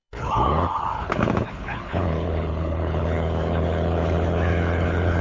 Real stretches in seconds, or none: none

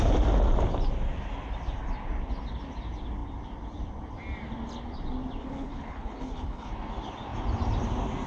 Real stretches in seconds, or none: 0.0-5.4; 6.7-8.3

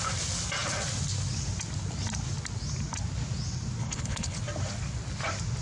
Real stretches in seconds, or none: 0.0-3.8; 4.4-5.6

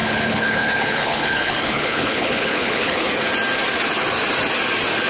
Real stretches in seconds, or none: 3.1-5.1

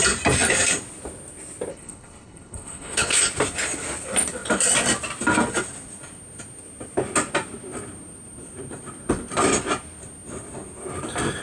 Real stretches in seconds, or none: 0.0-1.7; 3.2-11.4

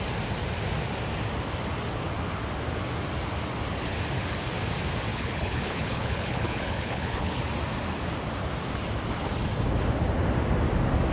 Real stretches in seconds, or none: 0.0-5.1; 7.4-11.1

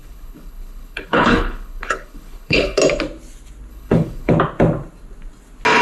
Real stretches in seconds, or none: 2.8-3.7; 4.3-5.8

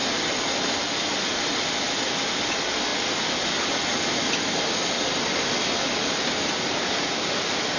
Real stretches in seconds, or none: 0.0-7.8